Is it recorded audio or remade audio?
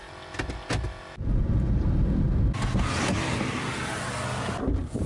recorded